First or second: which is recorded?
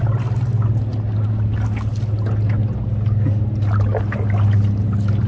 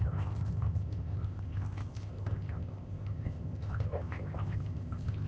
first